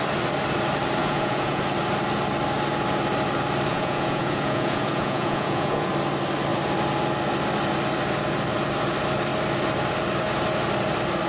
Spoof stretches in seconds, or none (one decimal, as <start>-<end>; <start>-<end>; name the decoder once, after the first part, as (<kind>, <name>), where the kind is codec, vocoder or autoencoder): 1.0-1.6 (vocoder, Vocos); 3.7-5.9